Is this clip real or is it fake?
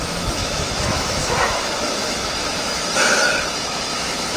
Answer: fake